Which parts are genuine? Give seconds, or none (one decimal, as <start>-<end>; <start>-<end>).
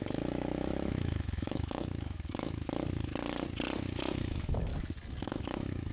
3.1-4.0; 4.7-5.2